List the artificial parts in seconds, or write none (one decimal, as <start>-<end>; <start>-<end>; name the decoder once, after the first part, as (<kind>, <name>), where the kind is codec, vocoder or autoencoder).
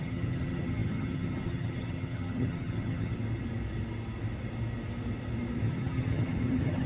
0.0-3.2 (vocoder, HiFi-GAN); 5.6-6.9